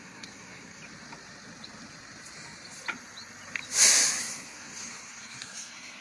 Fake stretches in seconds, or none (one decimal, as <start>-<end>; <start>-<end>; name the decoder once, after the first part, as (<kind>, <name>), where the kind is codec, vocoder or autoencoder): 0.0-0.8 (codec, SNAC); 4.2-6.0